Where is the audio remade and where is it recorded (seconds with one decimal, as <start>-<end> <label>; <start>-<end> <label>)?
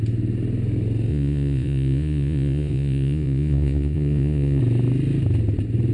0.0-1.1 recorded; 1.1-4.6 remade; 4.6-5.9 recorded